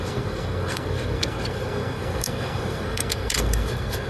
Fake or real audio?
fake